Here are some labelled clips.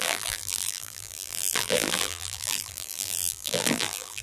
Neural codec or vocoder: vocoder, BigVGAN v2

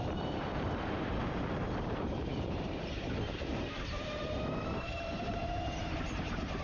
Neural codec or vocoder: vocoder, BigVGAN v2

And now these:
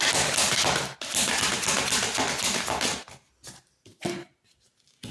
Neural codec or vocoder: none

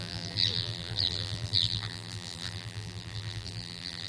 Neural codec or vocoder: vocoder, BigVGAN v2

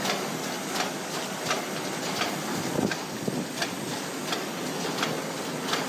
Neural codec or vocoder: none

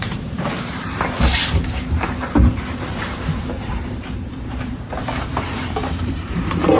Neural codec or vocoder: vocoder, BigVGAN v2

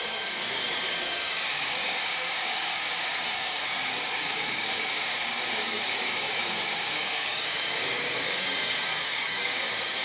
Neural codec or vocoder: codec, DAC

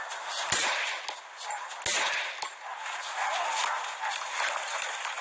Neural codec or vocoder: none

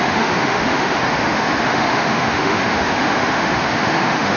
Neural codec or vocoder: autoencoder, DAC-VAE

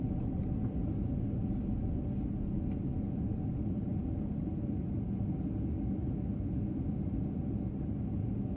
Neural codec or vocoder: none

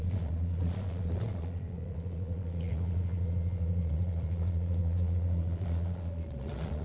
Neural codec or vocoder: vocoder, Vocos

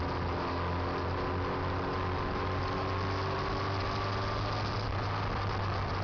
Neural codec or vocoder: none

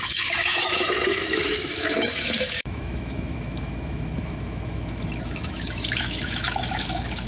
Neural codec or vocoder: autoencoder, DAC-VAE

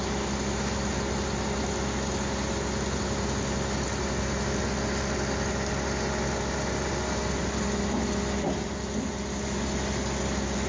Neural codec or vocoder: none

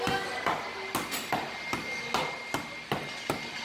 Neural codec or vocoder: none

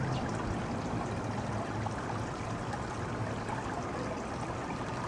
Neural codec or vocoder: none